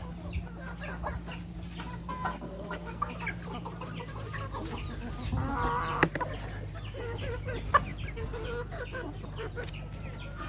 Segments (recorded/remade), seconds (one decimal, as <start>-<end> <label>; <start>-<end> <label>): 0.0-2.0 recorded; 2.0-3.1 remade; 3.1-10.5 recorded